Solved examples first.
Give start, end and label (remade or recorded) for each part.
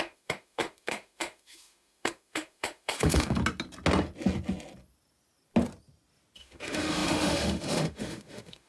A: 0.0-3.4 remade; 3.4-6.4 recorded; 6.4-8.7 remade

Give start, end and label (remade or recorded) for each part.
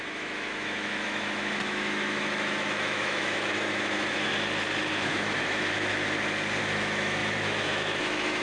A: 0.0-4.3 remade; 4.3-4.9 recorded; 4.9-5.9 remade; 5.9-6.6 recorded; 6.6-8.4 remade